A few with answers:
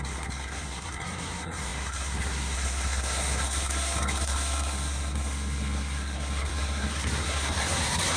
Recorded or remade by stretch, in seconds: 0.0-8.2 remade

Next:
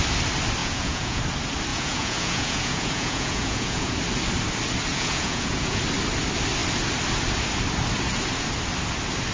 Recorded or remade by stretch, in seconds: 0.0-0.6 recorded; 0.6-1.2 remade; 1.2-1.7 recorded; 1.7-3.9 remade; 3.9-4.9 recorded; 4.9-5.8 remade; 5.8-9.3 recorded

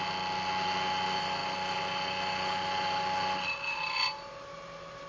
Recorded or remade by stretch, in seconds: 0.0-5.1 recorded

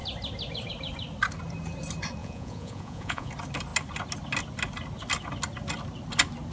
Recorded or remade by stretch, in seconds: 0.0-2.2 recorded; 2.2-3.3 remade; 3.3-6.5 recorded